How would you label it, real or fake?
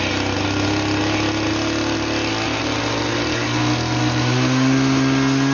real